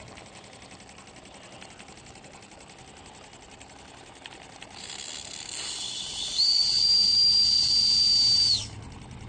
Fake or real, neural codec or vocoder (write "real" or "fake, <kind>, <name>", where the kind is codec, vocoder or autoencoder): real